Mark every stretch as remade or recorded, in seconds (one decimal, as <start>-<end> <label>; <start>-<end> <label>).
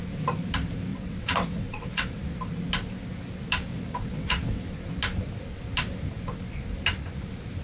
0.0-0.9 recorded; 0.9-2.2 remade; 2.2-3.7 recorded; 3.7-4.9 remade; 4.9-7.6 recorded